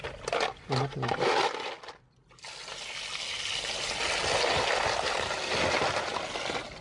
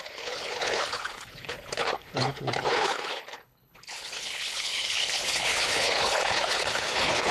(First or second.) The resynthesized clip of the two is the second